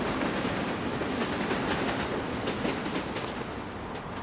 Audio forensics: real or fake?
real